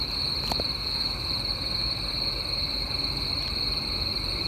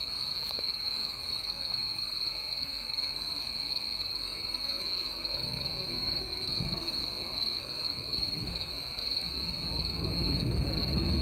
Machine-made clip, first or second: second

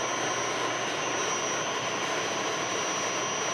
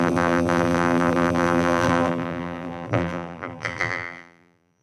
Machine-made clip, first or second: second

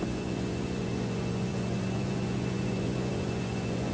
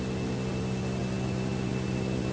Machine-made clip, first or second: first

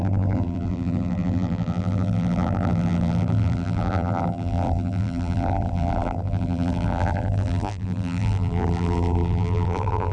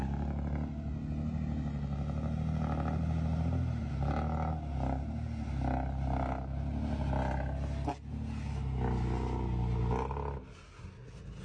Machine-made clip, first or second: first